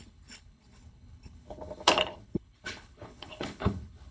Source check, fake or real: fake